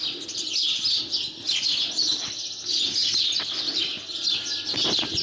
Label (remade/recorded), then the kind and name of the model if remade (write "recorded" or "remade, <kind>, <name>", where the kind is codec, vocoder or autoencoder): recorded